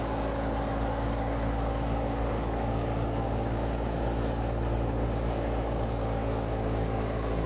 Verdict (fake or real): fake